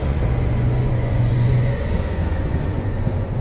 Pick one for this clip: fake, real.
fake